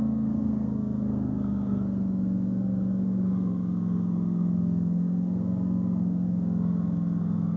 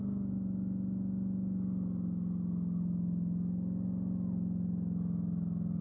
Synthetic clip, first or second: first